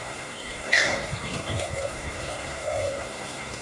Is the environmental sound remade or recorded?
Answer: remade